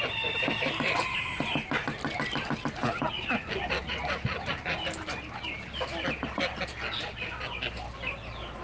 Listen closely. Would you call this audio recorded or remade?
recorded